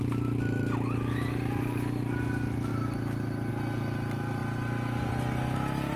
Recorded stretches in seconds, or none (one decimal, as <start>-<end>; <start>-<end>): 0.0-6.0